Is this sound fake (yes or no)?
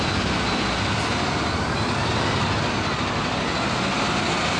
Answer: no